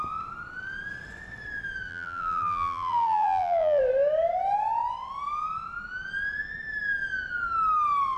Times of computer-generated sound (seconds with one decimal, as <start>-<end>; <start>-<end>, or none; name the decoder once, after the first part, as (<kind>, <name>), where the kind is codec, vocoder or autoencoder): 1.9-3.8 (vocoder, BigVGAN v2)